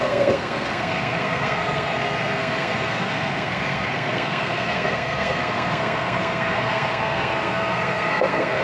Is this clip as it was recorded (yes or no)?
no